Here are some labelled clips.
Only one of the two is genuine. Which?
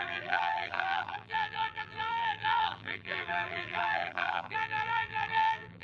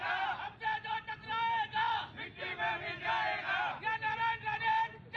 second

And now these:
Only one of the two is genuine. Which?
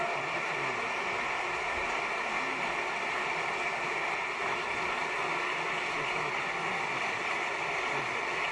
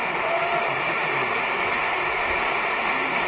first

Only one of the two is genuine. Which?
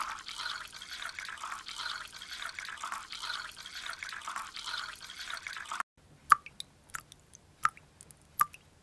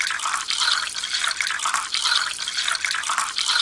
first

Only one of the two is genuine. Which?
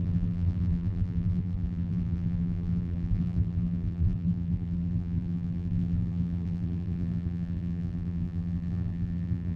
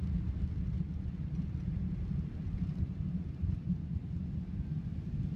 second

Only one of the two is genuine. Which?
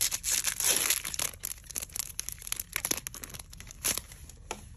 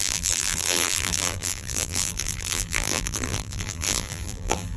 first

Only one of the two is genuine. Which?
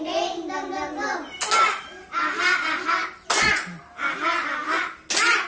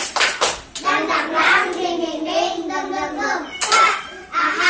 first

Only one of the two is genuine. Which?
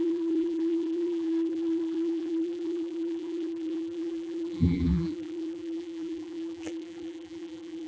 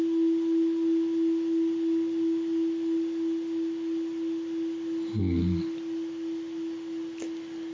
second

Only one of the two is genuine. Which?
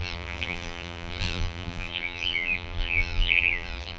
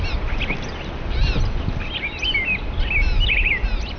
second